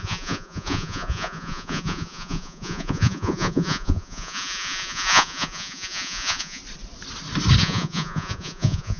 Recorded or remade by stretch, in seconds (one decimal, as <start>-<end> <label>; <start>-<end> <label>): 0.0-6.6 remade; 6.6-7.6 recorded; 7.6-9.0 remade